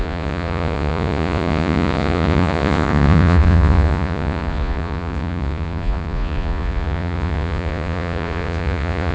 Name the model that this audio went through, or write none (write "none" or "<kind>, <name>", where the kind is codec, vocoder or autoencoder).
vocoder, Vocos